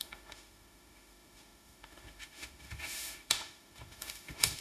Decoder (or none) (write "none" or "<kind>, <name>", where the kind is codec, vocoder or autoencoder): autoencoder, DAC-VAE